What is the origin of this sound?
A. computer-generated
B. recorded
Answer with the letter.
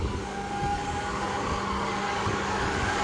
A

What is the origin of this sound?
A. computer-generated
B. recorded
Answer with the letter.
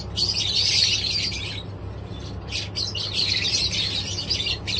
B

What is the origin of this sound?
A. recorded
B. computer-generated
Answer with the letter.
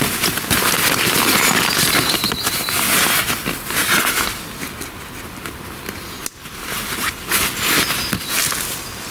A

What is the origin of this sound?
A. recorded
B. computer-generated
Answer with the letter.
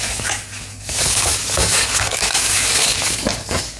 B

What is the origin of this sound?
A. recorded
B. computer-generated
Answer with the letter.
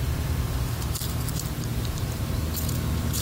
B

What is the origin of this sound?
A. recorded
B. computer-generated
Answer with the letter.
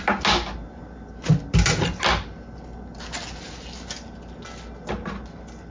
A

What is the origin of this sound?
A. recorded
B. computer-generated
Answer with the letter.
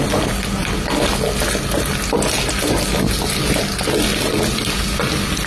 A